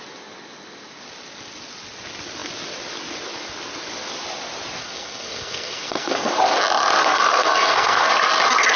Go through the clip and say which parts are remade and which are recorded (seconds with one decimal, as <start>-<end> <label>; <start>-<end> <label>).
0.0-4.8 recorded; 4.8-6.3 remade; 6.3-7.0 recorded; 7.0-8.1 remade; 8.1-8.8 recorded